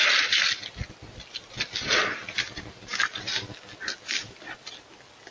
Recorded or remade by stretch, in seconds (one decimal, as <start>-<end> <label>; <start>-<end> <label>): 0.0-0.5 remade; 0.5-2.9 recorded; 2.9-4.7 remade; 4.7-5.3 recorded